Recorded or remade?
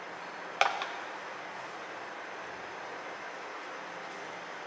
recorded